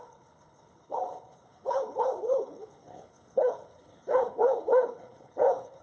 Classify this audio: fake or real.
fake